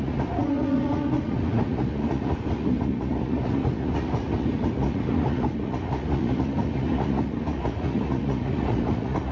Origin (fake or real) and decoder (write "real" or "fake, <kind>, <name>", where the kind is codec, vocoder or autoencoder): fake, vocoder, Vocos